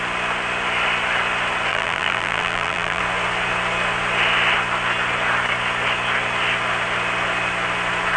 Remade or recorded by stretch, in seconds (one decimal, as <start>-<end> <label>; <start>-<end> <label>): 0.0-1.7 recorded; 1.7-3.0 remade; 3.0-8.2 recorded